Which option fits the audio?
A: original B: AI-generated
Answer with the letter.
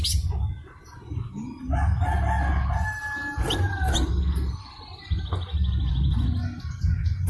A